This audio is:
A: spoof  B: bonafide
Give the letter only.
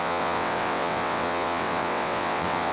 A